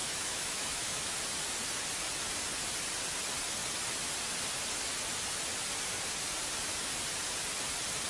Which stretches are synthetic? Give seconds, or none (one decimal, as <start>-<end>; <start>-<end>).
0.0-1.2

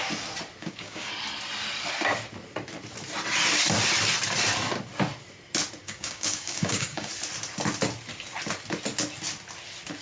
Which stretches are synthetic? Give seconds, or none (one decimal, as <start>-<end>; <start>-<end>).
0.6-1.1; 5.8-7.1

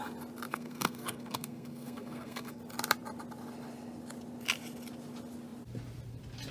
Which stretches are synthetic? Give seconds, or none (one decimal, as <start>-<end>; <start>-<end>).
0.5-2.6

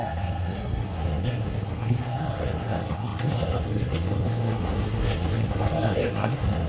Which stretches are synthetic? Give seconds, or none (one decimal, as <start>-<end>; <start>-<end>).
0.0-6.7